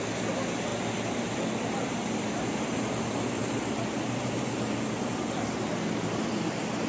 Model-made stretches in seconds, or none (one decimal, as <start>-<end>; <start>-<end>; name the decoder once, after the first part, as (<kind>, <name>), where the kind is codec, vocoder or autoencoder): none